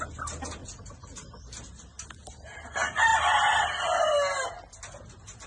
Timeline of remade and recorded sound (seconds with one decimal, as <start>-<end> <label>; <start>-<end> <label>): 0.0-5.5 recorded